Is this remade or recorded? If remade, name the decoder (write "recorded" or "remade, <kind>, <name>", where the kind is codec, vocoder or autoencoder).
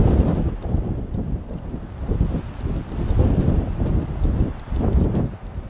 recorded